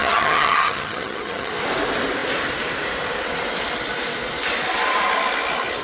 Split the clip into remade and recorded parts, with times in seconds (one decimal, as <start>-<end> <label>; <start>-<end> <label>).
0.0-1.5 remade; 1.5-5.8 recorded